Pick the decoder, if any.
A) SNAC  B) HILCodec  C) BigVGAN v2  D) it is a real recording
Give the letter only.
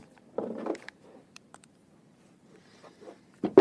C